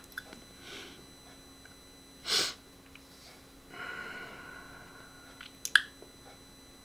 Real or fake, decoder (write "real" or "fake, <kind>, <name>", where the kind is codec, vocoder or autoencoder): real